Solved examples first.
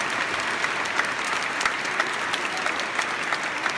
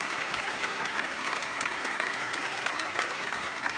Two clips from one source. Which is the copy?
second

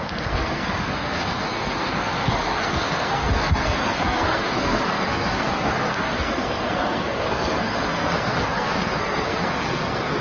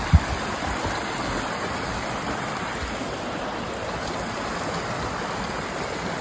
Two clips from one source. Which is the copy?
first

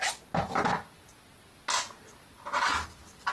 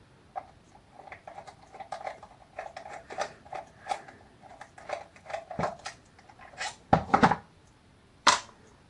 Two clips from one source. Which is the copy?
second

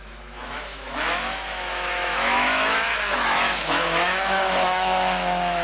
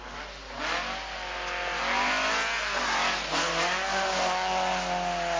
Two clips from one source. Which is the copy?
first